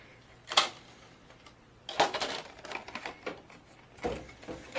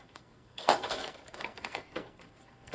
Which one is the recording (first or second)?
first